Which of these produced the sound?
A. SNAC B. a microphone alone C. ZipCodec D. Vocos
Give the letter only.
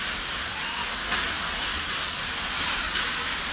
B